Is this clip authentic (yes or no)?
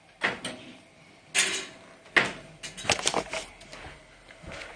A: yes